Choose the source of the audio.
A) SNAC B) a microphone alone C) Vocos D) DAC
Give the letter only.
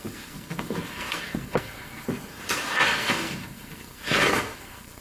A